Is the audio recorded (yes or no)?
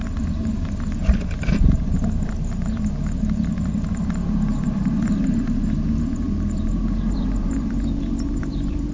no